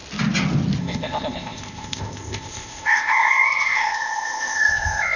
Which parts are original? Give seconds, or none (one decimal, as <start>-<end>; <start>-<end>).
0.0-0.8